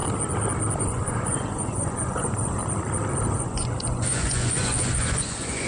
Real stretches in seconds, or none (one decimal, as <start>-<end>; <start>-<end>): 0.0-0.8; 2.6-3.4

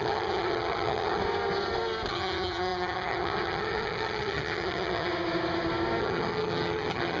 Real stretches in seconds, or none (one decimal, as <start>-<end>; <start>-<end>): 1.2-2.1; 5.1-6.0

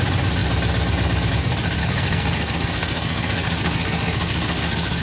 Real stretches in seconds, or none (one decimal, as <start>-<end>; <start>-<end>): 0.0-1.8

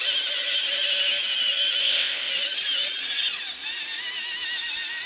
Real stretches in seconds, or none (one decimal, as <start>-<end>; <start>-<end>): 0.0-1.8; 2.3-5.1

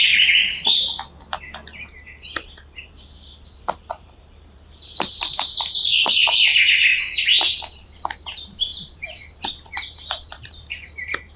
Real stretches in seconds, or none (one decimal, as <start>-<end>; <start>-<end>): 0.4-3.5; 6.9-7.8

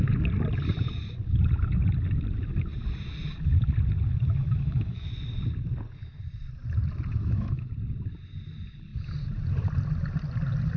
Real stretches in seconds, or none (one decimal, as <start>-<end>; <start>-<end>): 0.0-4.4; 5.1-7.1; 7.7-10.8